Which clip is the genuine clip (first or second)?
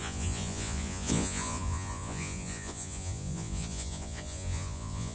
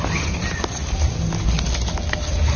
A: second